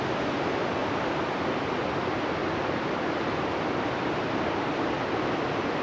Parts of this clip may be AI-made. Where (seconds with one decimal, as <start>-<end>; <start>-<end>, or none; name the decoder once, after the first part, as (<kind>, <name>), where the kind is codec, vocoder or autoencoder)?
0.8-1.4 (vocoder, BigVGAN v2); 2.4-4.9